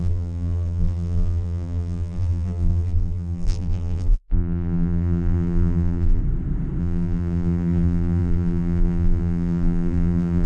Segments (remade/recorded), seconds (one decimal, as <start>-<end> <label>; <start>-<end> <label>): 0.0-6.2 remade; 6.2-6.8 recorded; 6.8-10.5 remade